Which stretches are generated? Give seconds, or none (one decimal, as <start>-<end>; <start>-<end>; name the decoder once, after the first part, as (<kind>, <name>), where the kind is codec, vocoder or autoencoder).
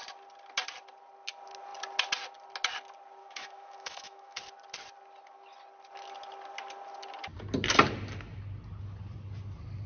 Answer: 3.2-4.4 (autoencoder, DAC-VAE)